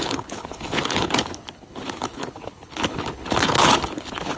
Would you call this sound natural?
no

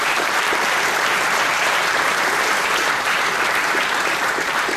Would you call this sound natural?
no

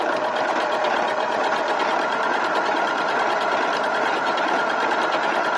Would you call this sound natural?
yes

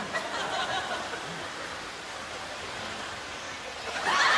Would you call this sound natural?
yes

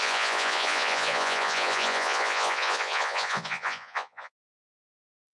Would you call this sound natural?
no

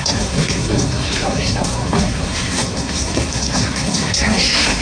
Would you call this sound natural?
no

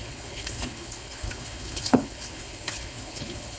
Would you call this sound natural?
no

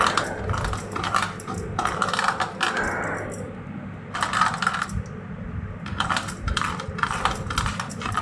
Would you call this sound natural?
yes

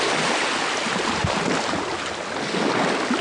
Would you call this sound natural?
yes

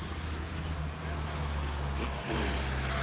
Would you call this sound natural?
yes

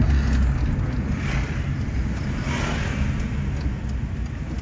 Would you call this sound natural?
yes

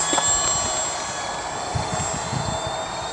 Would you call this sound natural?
yes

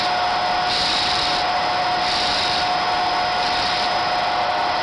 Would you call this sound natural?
yes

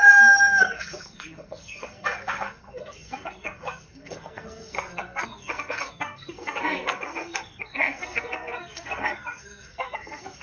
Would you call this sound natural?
no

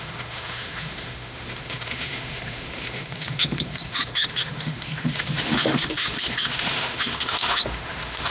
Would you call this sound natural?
no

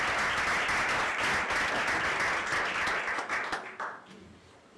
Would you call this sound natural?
yes